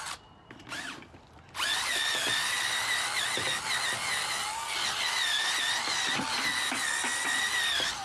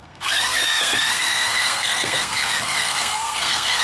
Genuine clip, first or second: first